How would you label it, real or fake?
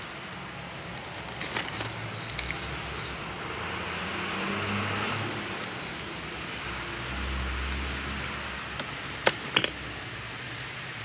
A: real